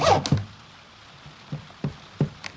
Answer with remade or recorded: recorded